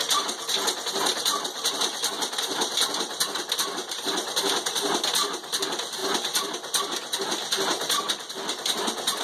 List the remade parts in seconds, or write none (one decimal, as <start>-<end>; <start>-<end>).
3.8-4.9